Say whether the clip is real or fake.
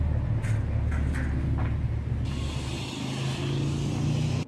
real